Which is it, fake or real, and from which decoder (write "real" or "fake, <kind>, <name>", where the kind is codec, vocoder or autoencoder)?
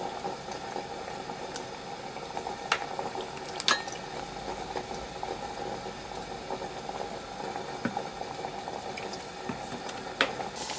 real